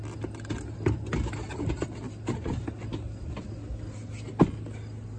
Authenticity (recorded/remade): recorded